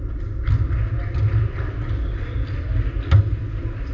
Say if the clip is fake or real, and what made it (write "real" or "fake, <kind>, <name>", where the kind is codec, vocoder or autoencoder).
real